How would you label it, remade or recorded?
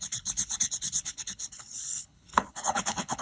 remade